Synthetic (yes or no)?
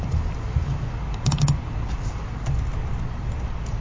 no